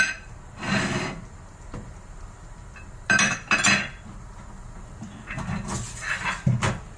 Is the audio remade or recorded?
recorded